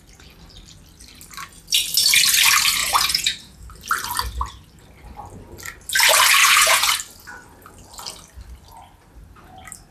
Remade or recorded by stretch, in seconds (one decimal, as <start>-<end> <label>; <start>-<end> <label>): 0.0-2.8 recorded; 2.8-3.6 remade; 3.6-6.4 recorded; 6.4-6.9 remade; 6.9-9.9 recorded